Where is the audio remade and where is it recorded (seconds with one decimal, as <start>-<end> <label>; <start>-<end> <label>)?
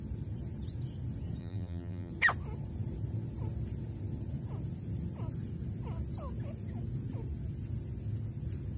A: 0.0-1.4 recorded; 1.4-2.1 remade; 2.1-8.8 recorded